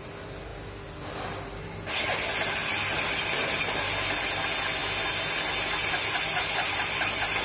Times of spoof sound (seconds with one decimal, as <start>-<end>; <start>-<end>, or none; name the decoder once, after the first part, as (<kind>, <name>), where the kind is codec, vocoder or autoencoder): none